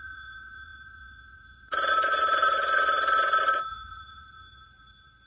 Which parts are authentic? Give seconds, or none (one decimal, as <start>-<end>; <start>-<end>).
none

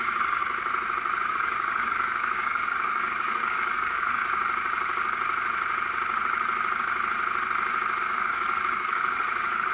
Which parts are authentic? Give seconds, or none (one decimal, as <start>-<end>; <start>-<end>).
0.4-1.3; 4.2-8.0

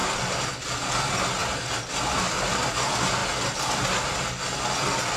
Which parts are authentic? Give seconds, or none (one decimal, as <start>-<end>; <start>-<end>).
0.5-3.2; 3.8-5.2

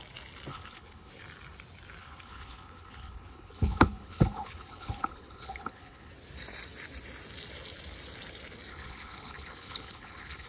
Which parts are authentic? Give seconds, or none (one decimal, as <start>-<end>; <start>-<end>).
0.0-0.5; 1.1-2.0; 6.1-8.7

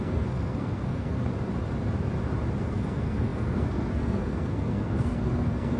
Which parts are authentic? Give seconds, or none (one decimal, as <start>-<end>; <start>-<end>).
1.3-2.6

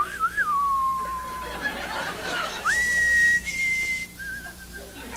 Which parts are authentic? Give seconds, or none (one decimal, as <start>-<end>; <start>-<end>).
0.0-2.1; 3.5-5.2

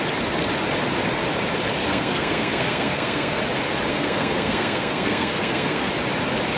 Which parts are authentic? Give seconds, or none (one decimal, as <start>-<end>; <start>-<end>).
0.0-1.8; 3.4-3.9; 5.9-6.6

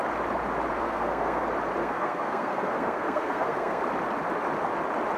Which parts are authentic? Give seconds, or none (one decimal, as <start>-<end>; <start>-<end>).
0.0-0.7; 1.4-1.8; 3.8-5.2